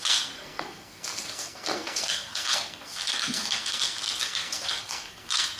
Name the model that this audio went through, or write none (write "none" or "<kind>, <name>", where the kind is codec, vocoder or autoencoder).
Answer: codec, SNAC